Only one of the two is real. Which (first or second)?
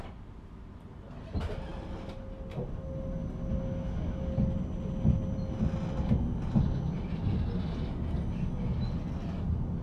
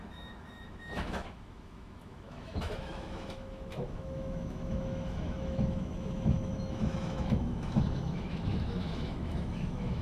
first